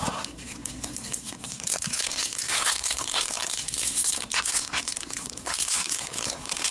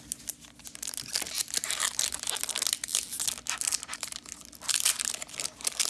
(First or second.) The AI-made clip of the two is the first